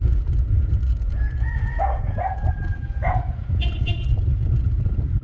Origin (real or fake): fake